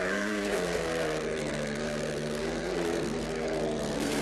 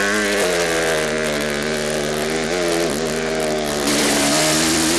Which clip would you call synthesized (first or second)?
first